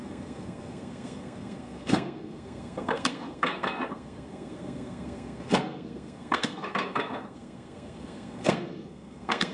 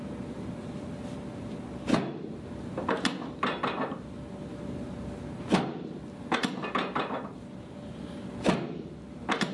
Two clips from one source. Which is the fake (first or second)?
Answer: first